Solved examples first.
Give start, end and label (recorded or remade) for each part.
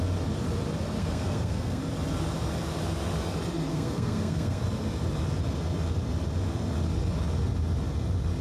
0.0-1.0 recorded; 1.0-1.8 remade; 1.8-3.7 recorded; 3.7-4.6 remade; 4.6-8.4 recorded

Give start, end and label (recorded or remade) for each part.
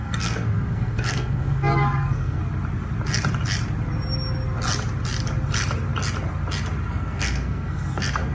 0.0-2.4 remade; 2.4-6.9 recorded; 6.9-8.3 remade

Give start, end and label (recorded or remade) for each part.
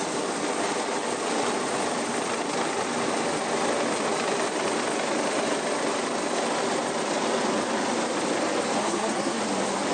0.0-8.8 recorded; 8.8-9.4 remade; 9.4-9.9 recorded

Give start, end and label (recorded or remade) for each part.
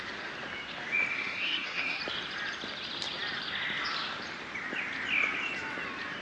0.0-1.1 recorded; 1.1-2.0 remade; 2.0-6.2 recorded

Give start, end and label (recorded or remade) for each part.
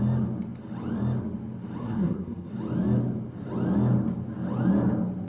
0.0-1.8 recorded; 1.8-2.5 remade; 2.5-5.3 recorded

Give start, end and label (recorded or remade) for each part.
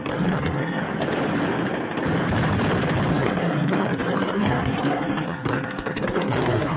0.0-0.8 remade; 0.8-3.1 recorded; 3.1-6.8 remade